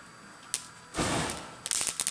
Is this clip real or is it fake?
real